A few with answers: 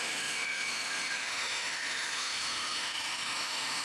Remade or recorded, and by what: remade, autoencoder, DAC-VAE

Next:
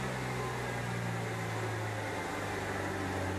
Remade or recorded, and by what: recorded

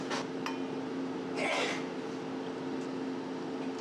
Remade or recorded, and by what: recorded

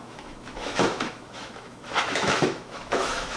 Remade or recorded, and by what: remade, autoencoder, DAC-VAE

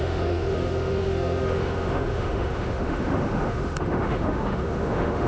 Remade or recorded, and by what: remade, autoencoder, DAC-VAE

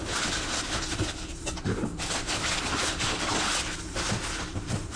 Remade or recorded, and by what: recorded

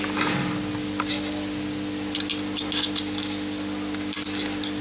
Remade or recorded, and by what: recorded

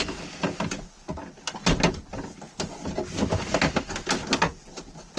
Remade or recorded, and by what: recorded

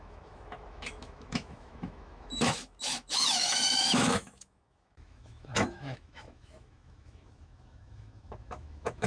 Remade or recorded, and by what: remade, autoencoder, DAC-VAE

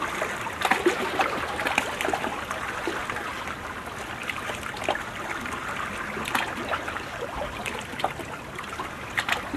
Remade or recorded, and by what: recorded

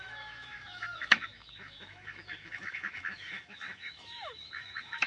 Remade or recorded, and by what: remade, autoencoder, DAC-VAE